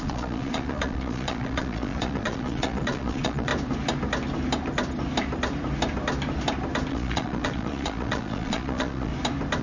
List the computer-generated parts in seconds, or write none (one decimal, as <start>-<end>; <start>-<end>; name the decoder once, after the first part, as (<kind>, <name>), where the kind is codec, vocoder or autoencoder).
0.0-3.5 (vocoder, Vocos); 6.9-9.1